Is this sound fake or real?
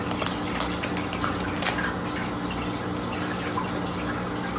real